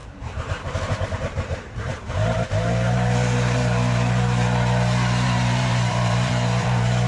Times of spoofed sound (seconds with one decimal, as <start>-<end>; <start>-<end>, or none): 0.0-7.1